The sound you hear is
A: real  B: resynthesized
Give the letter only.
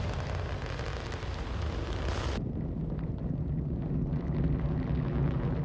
A